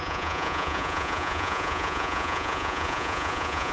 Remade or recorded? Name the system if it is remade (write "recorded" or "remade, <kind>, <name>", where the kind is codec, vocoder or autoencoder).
remade, vocoder, Vocos